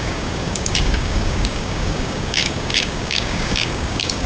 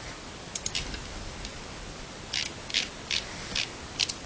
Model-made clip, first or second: first